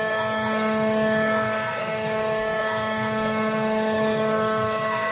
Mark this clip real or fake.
fake